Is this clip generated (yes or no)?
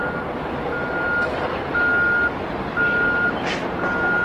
no